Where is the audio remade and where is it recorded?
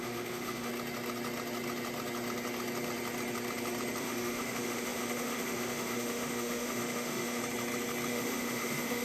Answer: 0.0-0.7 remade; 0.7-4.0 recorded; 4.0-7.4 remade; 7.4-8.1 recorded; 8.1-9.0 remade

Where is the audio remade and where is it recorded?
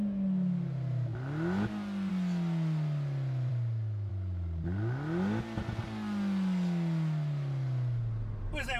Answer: 0.0-8.8 recorded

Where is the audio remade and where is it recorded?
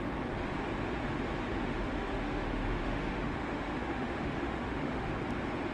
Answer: 0.0-1.7 recorded; 1.7-5.1 remade; 5.1-5.7 recorded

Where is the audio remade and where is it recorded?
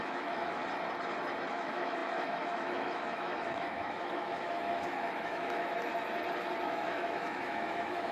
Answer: 0.0-0.6 remade; 0.6-1.5 recorded; 1.5-5.9 remade; 5.9-6.7 recorded; 6.7-8.1 remade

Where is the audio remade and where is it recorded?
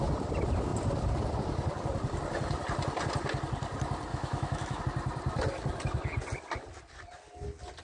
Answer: 0.0-4.1 recorded; 4.1-4.8 remade; 4.8-7.8 recorded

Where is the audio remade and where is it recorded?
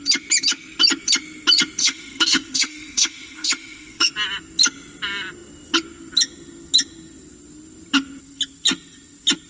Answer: 0.0-1.8 recorded; 1.8-4.1 remade; 4.1-9.5 recorded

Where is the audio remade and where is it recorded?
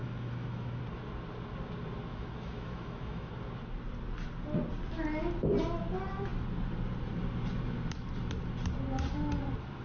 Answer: 0.0-0.8 remade; 0.8-2.1 recorded; 2.1-3.3 remade; 3.3-9.8 recorded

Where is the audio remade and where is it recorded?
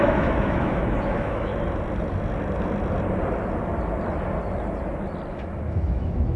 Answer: 0.0-1.5 remade; 1.5-5.3 recorded; 5.3-6.4 remade